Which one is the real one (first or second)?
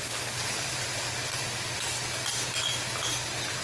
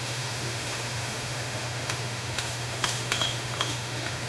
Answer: first